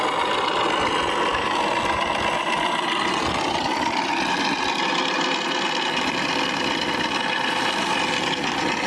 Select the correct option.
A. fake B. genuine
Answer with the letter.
B